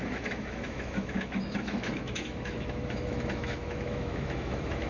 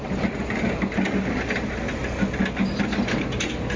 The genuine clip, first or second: second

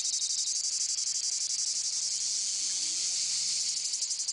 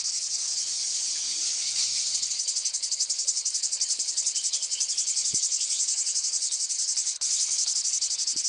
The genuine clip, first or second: first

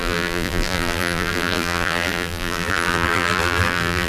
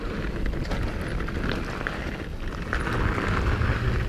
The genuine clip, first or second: second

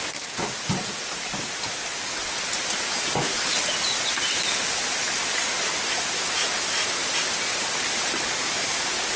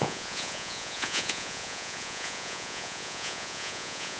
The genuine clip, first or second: first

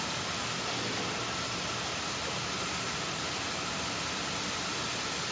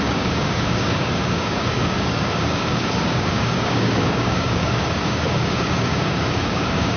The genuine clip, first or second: first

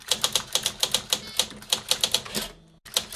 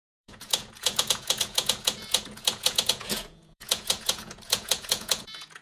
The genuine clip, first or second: first